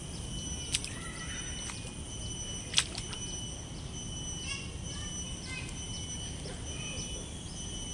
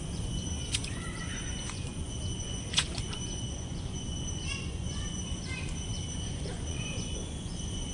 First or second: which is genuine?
first